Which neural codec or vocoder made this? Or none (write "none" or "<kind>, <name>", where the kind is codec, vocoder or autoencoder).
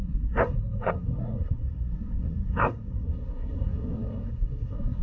codec, SNAC